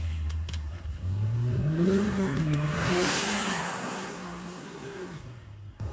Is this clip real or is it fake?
fake